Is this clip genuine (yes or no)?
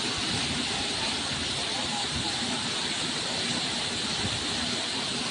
no